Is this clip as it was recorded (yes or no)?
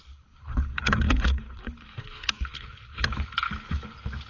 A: no